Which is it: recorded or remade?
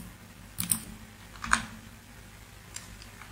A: recorded